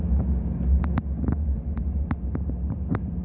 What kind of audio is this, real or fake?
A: fake